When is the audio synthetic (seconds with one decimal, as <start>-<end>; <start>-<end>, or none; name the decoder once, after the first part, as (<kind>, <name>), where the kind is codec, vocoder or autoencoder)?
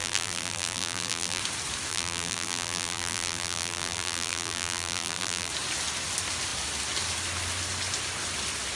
0.0-1.4 (vocoder, BigVGAN v2); 1.9-5.5